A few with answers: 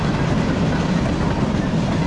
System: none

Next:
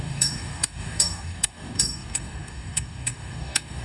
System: codec, DAC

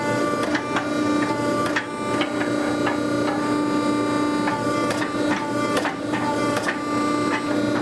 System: none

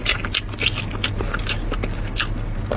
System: none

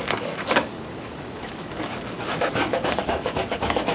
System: codec, DAC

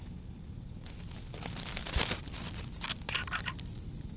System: none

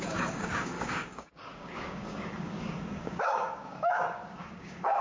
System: codec, DAC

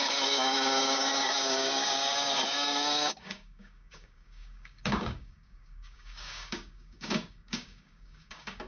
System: codec, DAC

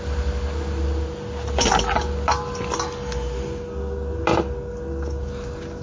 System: none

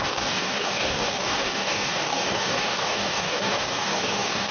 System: codec, DAC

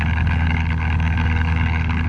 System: codec, DAC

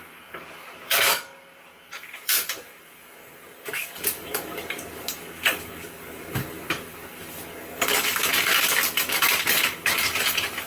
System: codec, DAC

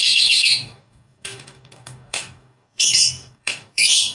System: codec, DAC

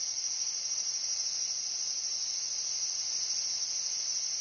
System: none